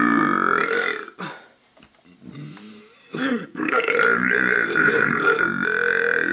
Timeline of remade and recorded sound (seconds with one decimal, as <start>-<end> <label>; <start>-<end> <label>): 0.0-3.0 recorded; 3.0-3.9 remade; 3.9-4.8 recorded; 4.8-5.4 remade; 5.4-6.3 recorded